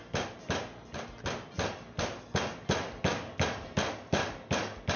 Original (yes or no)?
yes